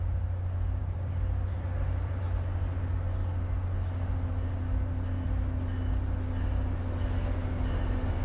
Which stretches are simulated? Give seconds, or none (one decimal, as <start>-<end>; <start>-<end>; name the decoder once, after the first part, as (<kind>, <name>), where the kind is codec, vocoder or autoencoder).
0.8-2.2 (vocoder, BigVGAN v2)